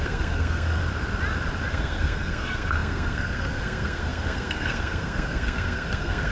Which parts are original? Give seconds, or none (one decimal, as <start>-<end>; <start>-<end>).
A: 0.8-1.7